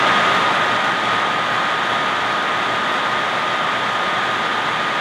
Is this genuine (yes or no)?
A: yes